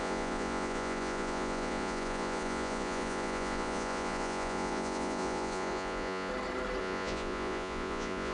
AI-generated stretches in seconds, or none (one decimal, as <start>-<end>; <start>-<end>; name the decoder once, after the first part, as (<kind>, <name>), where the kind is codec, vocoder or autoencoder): 0.0-6.3 (vocoder, Vocos); 6.8-8.3